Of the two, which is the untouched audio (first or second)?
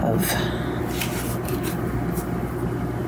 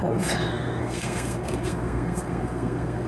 first